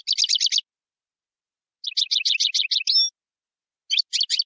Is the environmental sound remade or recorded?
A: recorded